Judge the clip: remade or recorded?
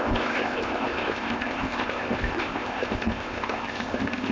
remade